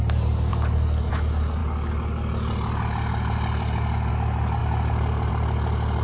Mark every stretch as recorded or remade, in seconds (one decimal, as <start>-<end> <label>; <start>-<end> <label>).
0.0-6.0 recorded